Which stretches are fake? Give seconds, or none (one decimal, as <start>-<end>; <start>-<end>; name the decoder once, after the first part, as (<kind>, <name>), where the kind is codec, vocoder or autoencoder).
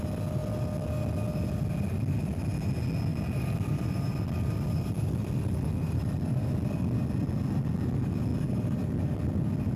3.1-6.5 (vocoder, BigVGAN v2)